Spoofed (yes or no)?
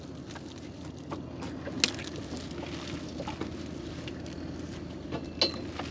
no